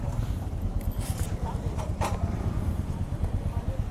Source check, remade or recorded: remade